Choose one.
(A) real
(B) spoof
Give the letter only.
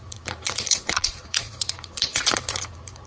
B